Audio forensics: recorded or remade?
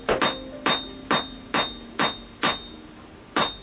recorded